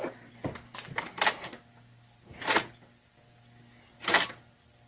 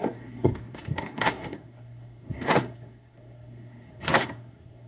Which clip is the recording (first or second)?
first